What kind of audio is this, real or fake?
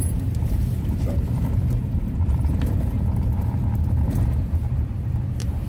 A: fake